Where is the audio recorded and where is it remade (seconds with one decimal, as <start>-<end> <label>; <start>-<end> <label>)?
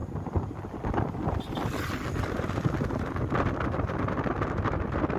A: 0.0-5.2 recorded